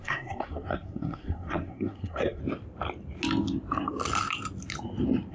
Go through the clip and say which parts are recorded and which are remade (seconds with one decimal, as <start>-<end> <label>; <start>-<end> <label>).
0.0-2.4 remade; 2.4-5.3 recorded

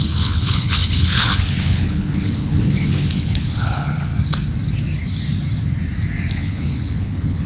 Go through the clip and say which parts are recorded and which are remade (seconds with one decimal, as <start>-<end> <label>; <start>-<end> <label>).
0.0-4.1 remade; 4.1-6.3 recorded; 6.3-7.5 remade

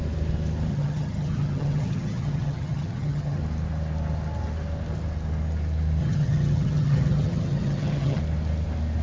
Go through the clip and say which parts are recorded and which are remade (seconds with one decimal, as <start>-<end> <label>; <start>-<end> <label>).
0.0-0.7 recorded; 0.7-3.4 remade; 3.4-6.0 recorded; 6.0-8.2 remade; 8.2-9.0 recorded

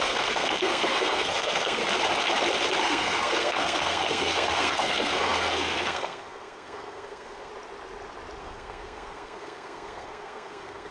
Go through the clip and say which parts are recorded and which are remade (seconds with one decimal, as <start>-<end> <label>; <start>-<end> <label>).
0.0-1.8 remade; 1.8-2.8 recorded; 2.8-7.5 remade; 7.5-8.4 recorded; 8.4-10.9 remade

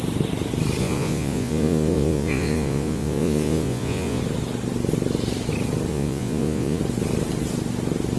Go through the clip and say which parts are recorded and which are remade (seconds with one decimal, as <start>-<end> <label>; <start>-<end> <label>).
0.0-0.8 recorded; 0.8-4.2 remade; 4.2-5.9 recorded; 5.9-6.8 remade; 6.8-8.2 recorded

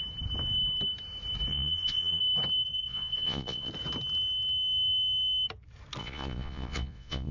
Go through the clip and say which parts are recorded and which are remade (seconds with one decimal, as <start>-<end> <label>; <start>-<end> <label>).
0.0-1.5 recorded; 1.5-2.2 remade; 2.2-2.8 recorded; 2.8-3.7 remade; 3.7-6.0 recorded; 6.0-7.3 remade